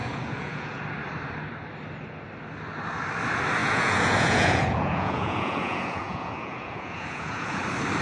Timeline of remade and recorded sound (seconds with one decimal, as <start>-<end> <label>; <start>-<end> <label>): 0.0-0.8 remade; 0.8-3.6 recorded; 3.6-7.6 remade; 7.6-8.0 recorded